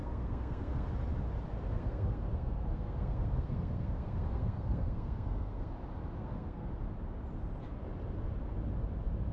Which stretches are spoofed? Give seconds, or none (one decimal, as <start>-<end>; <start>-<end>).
0.0-0.9; 1.7-5.7; 6.2-6.7